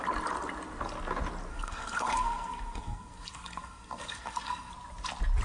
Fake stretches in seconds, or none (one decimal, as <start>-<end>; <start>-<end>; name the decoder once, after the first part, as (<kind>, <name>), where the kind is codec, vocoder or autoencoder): 1.5-4.7 (codec, SNAC)